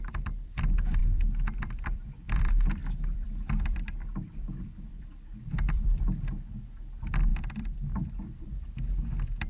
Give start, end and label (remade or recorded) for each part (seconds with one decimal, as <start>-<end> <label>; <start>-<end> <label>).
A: 0.0-9.5 remade